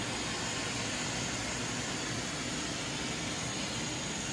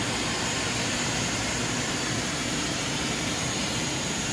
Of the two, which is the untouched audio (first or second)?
first